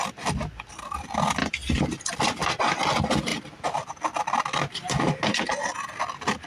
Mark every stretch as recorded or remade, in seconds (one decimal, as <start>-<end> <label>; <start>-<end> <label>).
0.0-1.4 recorded; 1.4-2.6 remade; 2.6-6.5 recorded